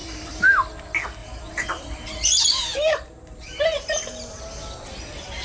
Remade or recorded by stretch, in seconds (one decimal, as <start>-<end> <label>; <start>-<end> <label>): 0.0-0.5 remade; 0.5-1.2 recorded; 1.2-4.4 remade; 4.4-5.4 recorded